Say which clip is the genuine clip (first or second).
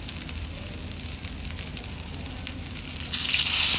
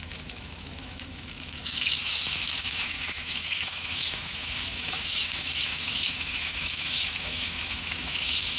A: first